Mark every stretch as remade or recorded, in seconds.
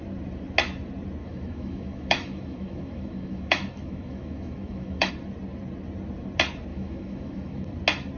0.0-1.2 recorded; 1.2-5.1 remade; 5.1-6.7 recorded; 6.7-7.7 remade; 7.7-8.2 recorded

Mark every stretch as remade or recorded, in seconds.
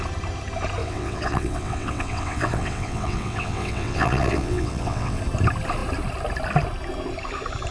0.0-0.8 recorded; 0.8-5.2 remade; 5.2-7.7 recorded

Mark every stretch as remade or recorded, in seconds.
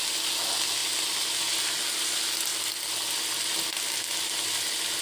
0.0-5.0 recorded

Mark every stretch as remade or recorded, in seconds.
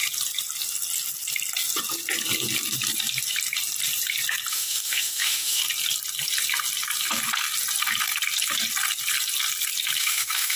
0.0-4.5 recorded; 4.5-5.6 remade; 5.6-10.0 recorded; 10.0-10.6 remade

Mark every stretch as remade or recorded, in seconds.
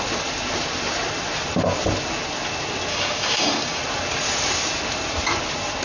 0.0-2.9 recorded; 2.9-3.8 remade; 3.8-5.8 recorded